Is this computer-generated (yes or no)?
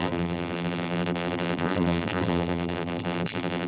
yes